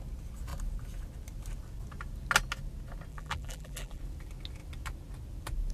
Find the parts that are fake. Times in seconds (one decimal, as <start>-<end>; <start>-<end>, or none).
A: 3.1-4.0